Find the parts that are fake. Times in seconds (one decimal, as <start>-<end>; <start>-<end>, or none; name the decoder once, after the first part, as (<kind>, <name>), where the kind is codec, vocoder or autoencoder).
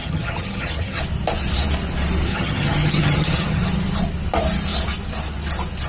0.0-1.0 (vocoder, HiFi-GAN); 2.3-3.6